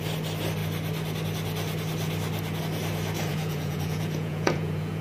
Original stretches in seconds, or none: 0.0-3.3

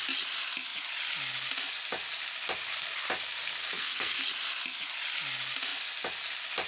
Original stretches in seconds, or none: 0.0-3.6; 4.2-6.7

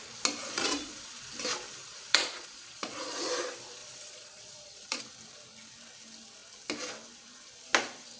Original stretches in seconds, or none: 0.0-0.4; 1.3-1.8; 3.3-3.8; 5.0-8.2

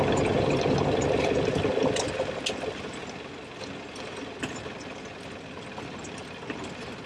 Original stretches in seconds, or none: 0.0-7.1

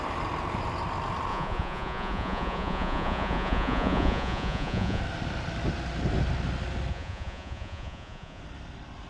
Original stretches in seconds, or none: 0.0-1.3; 5.0-6.9; 8.4-9.1

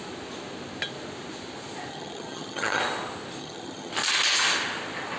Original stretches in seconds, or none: 0.0-1.9; 2.8-3.4; 3.9-5.2

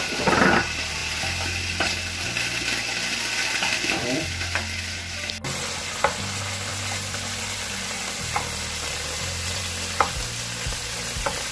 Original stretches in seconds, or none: 0.0-6.7; 9.6-11.5